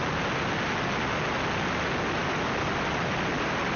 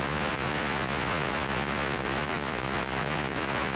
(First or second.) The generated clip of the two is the second